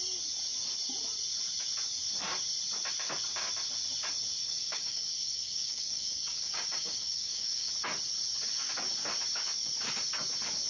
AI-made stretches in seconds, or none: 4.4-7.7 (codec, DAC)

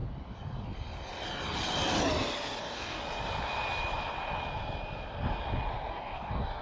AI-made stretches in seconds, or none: 2.6-3.0 (codec, DAC); 5.9-6.6